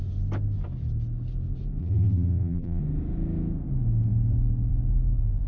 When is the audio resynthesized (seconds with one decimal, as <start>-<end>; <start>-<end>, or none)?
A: 1.8-2.8